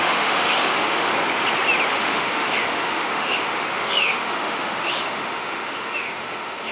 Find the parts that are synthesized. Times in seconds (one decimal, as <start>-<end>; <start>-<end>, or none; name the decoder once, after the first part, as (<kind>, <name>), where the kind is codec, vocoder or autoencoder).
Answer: 0.0-1.1 (autoencoder, DAC-VAE); 1.9-6.7